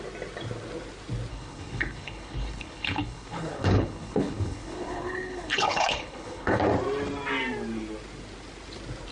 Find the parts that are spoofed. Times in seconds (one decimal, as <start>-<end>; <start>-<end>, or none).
1.3-6.6